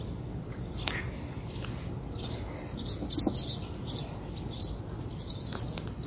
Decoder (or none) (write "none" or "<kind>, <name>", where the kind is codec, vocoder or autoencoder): none